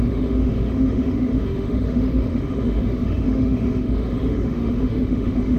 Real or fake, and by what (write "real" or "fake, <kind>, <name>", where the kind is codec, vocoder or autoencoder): fake, autoencoder, DAC-VAE